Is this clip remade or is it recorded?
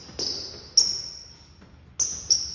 recorded